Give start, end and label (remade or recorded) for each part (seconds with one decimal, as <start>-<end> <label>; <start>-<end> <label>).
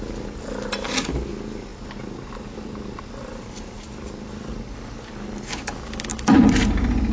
0.0-1.7 recorded; 1.7-5.1 remade; 5.1-6.1 recorded; 6.1-6.6 remade; 6.6-7.1 recorded